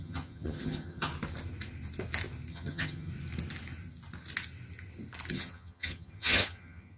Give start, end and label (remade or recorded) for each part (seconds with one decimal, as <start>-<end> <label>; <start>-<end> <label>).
0.0-1.1 remade; 1.1-2.5 recorded; 2.5-3.1 remade; 3.1-5.3 recorded; 5.3-7.0 remade